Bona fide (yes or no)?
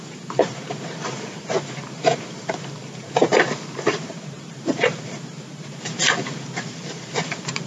no